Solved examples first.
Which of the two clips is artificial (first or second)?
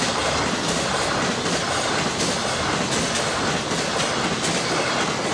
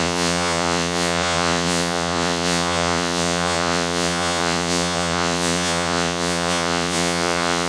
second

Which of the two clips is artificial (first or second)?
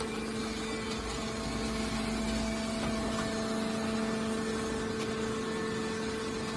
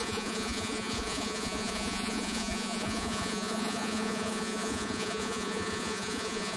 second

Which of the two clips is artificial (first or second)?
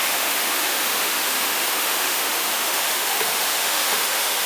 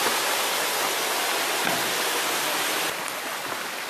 first